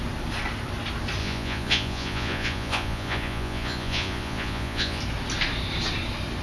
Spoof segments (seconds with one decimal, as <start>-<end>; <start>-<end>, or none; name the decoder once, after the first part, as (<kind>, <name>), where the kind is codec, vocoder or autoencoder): 1.2-5.0 (vocoder, Vocos)